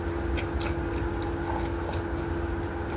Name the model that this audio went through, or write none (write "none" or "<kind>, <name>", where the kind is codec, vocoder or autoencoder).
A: none